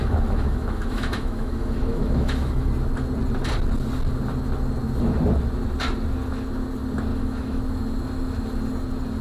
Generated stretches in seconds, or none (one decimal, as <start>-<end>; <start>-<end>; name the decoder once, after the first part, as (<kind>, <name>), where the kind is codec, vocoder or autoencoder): 0.0-2.7 (autoencoder, DAC-VAE); 7.1-7.6